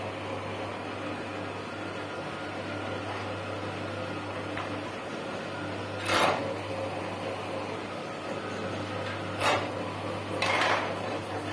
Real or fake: real